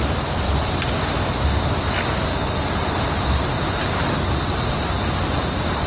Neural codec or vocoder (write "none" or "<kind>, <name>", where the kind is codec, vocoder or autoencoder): none